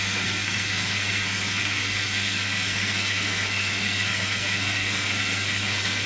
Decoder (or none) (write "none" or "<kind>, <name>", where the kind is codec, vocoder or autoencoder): codec, SNAC